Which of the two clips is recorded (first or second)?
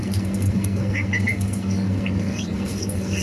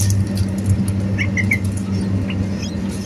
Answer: second